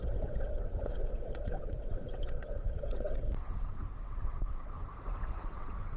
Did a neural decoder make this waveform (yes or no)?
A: yes